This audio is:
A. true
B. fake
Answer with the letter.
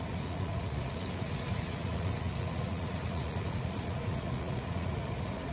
B